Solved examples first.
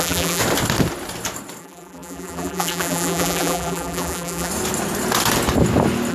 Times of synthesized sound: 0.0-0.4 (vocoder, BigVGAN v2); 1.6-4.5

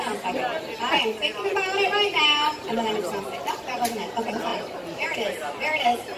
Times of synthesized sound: 1.9-2.9 (vocoder, BigVGAN v2); 4.5-6.2

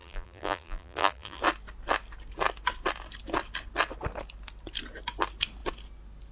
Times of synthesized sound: 0.0-1.4 (vocoder, BigVGAN v2)